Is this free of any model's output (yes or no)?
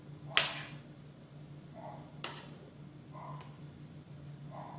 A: yes